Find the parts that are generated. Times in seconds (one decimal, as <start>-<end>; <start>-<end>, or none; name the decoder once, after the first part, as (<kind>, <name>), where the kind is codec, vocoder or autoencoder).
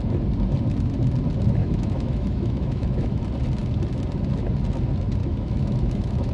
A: 1.6-3.2 (autoencoder, DAC-VAE); 5.2-6.3